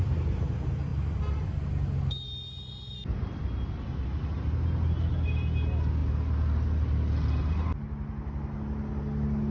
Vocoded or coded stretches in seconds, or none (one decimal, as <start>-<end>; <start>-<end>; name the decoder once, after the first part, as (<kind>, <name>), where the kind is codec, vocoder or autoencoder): none